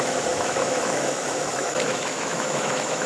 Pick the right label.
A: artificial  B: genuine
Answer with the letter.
A